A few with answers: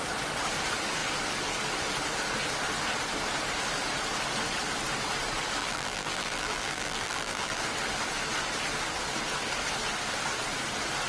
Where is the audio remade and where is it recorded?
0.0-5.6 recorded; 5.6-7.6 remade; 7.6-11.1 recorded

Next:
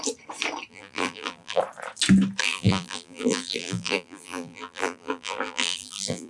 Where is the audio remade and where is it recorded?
0.0-0.7 recorded; 0.7-1.6 remade; 1.6-2.4 recorded; 2.4-6.3 remade

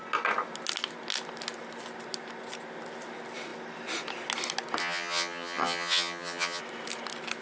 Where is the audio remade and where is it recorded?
0.0-4.8 recorded; 4.8-6.6 remade; 6.6-7.4 recorded

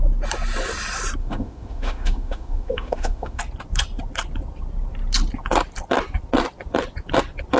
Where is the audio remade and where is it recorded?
0.0-1.2 recorded; 1.2-3.4 remade; 3.4-7.6 recorded

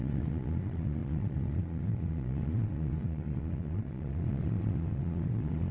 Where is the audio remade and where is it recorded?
0.0-5.7 remade